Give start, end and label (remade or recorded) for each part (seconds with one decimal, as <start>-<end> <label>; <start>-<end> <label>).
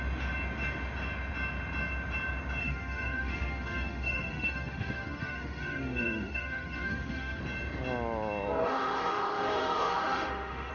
0.0-2.6 recorded; 2.6-7.4 remade; 7.4-8.6 recorded; 8.6-10.7 remade